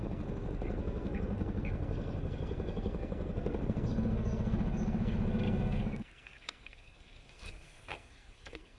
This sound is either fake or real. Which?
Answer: fake